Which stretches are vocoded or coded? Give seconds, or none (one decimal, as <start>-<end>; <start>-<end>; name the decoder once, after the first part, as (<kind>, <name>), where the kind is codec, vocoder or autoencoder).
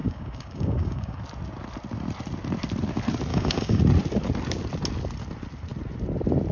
0.0-1.2 (codec, DAC); 3.3-3.8